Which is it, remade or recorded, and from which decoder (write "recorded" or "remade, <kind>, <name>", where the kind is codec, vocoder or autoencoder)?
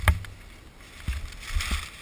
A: recorded